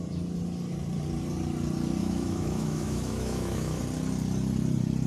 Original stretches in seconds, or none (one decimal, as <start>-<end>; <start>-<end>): 0.0-2.0; 3.8-5.1